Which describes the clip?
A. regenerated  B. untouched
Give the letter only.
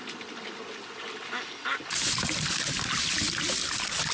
B